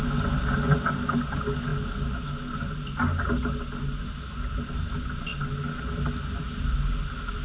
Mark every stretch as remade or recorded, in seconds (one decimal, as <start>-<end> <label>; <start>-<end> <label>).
0.0-7.4 recorded

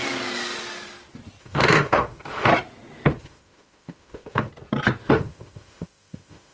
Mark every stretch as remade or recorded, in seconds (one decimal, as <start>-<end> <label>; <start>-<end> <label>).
0.0-1.4 recorded; 1.4-2.5 remade; 2.5-3.2 recorded; 3.2-4.5 remade; 4.5-5.1 recorded; 5.1-6.5 remade

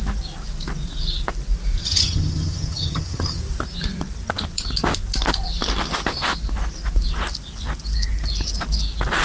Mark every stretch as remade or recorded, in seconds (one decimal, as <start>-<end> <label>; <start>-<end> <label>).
0.0-1.8 recorded; 1.8-3.4 remade; 3.4-9.2 recorded

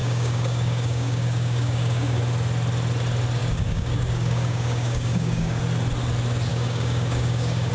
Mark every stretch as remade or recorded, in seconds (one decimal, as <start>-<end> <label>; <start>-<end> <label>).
0.0-2.2 remade; 2.2-3.4 recorded; 3.4-5.6 remade; 5.6-6.5 recorded; 6.5-7.7 remade

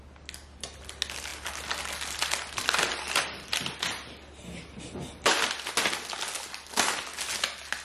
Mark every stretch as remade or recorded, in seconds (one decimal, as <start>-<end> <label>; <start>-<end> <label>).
0.0-1.3 recorded; 1.3-5.9 remade; 5.9-7.8 recorded